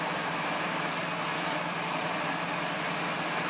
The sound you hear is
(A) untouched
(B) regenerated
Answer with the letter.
A